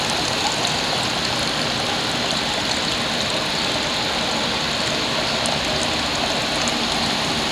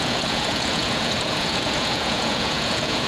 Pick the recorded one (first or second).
first